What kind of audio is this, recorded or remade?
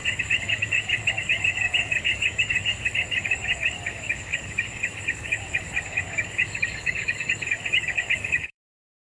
remade